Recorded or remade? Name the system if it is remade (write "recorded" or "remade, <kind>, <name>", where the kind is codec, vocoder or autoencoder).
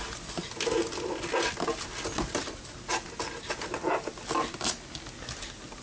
recorded